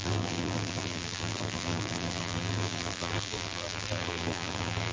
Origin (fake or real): fake